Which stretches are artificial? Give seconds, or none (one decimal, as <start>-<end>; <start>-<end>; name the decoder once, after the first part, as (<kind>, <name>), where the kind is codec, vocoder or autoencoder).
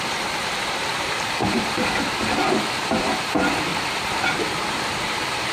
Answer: 0.0-3.7 (vocoder, BigVGAN v2); 4.8-5.5